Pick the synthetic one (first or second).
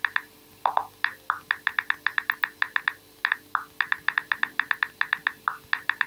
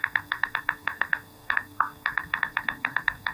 second